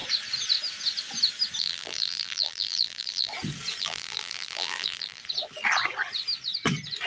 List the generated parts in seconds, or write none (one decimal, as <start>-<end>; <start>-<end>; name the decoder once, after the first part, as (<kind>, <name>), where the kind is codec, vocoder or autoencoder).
1.6-3.3 (vocoder, BigVGAN v2); 3.8-5.2